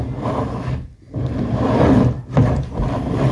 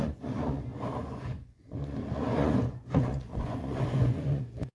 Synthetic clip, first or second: second